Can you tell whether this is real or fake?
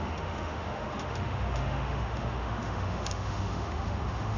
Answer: fake